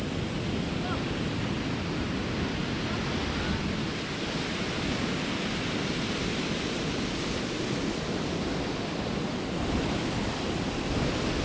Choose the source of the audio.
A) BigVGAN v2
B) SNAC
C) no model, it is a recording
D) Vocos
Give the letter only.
C